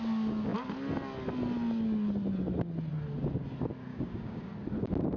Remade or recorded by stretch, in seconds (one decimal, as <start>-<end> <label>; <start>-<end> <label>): 0.0-3.9 recorded; 3.9-4.5 remade; 4.5-5.2 recorded